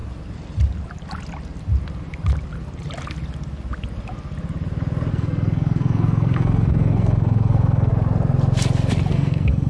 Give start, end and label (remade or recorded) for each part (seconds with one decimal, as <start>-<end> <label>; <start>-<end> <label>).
0.0-5.1 recorded; 5.1-7.9 remade; 7.9-9.1 recorded; 9.1-9.7 remade